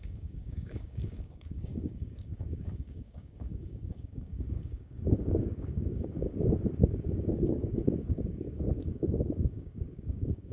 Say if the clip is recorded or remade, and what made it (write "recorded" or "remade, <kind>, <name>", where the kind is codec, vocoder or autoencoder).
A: remade, codec, DAC